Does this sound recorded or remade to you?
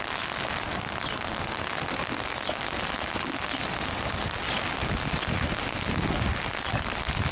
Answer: recorded